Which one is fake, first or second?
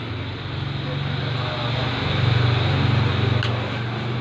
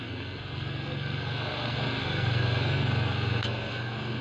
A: second